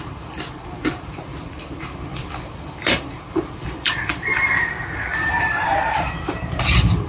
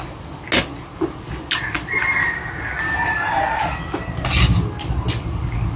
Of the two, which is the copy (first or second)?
first